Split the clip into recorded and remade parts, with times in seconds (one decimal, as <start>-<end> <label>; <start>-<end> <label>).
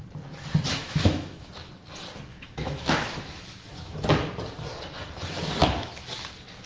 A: 0.0-0.7 recorded; 0.7-1.5 remade; 1.5-2.3 recorded; 2.3-4.0 remade; 4.0-5.6 recorded; 5.6-6.3 remade; 6.3-6.7 recorded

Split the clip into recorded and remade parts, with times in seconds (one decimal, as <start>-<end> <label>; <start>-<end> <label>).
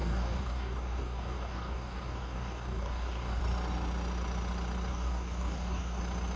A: 0.0-3.4 remade; 3.4-4.9 recorded; 4.9-6.0 remade; 6.0-6.4 recorded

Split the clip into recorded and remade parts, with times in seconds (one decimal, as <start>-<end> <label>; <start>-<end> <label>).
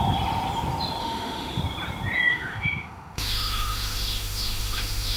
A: 0.0-1.0 recorded; 1.0-1.6 remade; 1.6-2.3 recorded; 2.3-5.2 remade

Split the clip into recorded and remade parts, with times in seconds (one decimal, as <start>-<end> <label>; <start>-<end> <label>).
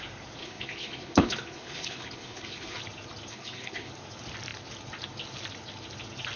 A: 0.0-0.4 recorded; 0.4-2.8 remade; 2.8-3.3 recorded; 3.3-3.9 remade; 3.9-6.4 recorded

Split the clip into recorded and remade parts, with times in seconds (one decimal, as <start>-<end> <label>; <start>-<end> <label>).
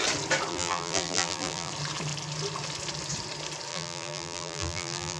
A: 0.0-0.5 recorded; 0.5-1.7 remade; 1.7-3.7 recorded; 3.7-5.2 remade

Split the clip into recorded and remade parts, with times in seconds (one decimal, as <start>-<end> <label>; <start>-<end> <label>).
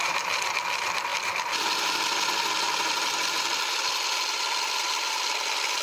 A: 0.0-5.8 recorded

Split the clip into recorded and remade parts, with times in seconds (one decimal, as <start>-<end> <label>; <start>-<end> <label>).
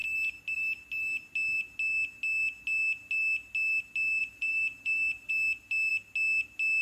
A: 0.0-4.2 recorded; 4.2-5.3 remade; 5.3-6.8 recorded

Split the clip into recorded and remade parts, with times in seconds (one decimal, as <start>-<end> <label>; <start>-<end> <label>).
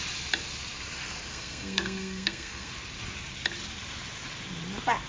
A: 0.0-1.3 recorded; 1.3-2.7 remade; 2.7-5.1 recorded